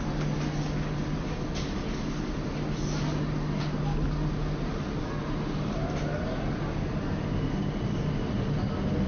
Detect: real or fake real